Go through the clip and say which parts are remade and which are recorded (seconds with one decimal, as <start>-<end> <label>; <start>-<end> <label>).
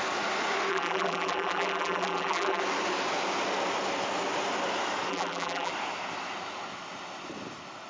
0.0-0.7 recorded; 0.7-2.6 remade; 2.6-5.1 recorded; 5.1-5.7 remade; 5.7-7.9 recorded